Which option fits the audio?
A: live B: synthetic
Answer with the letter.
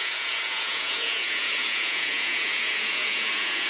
B